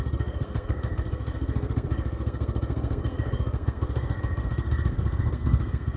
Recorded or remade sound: remade